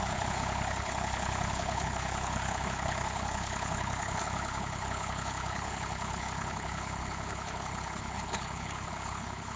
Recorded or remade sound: remade